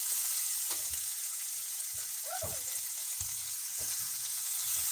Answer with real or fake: fake